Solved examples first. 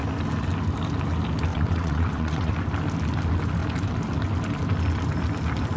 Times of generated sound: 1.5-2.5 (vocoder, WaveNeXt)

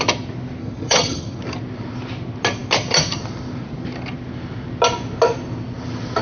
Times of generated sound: 0.6-1.4 (vocoder, HiFi-GAN)

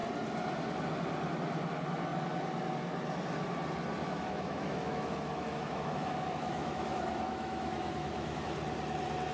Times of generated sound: 4.0-8.4 (autoencoder, DAC-VAE)